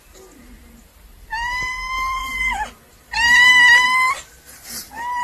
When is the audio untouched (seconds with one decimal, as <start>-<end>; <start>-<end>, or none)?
0.0-0.9; 1.6-2.2; 3.5-5.2